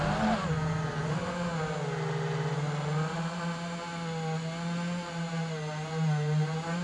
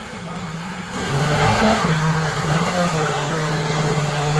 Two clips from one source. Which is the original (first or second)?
first